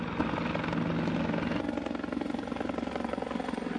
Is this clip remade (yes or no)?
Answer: no